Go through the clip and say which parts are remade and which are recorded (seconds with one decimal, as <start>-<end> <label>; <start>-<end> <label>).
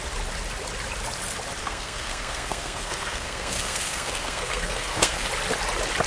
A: 0.0-1.6 recorded; 1.6-5.3 remade; 5.3-6.1 recorded